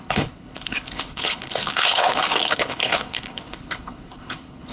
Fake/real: fake